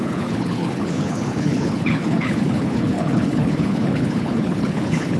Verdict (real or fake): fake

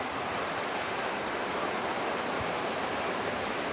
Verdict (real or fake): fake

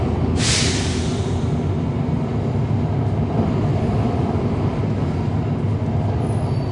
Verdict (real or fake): real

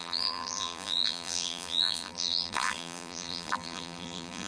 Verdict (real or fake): fake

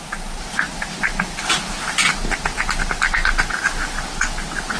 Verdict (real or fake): real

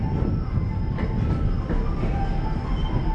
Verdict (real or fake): real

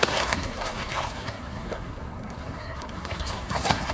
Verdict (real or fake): fake